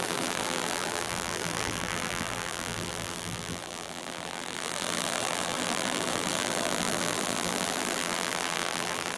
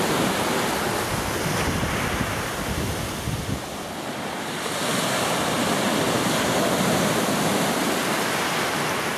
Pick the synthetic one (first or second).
first